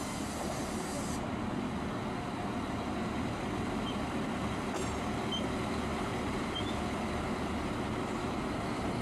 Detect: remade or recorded recorded